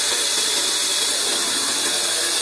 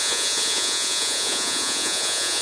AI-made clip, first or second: second